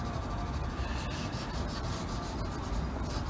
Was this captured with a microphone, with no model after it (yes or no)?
no